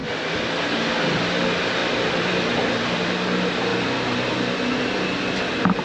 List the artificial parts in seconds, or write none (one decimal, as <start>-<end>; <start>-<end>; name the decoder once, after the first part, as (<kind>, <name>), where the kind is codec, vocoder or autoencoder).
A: 1.8-3.1 (vocoder, BigVGAN v2)